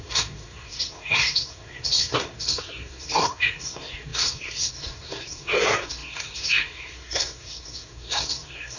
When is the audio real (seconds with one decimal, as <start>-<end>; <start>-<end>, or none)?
none